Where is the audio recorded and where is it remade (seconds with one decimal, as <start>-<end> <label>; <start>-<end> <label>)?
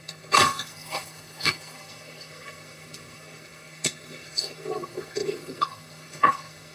0.0-6.7 remade